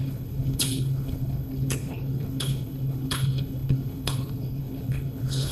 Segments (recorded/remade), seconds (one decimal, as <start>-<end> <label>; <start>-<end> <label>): 0.0-5.5 remade